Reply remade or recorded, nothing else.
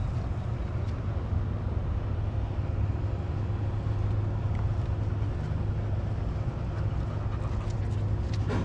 recorded